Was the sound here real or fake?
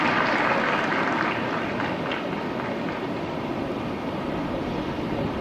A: real